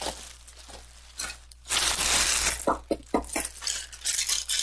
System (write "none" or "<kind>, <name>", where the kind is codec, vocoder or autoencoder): none